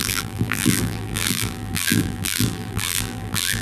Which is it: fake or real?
fake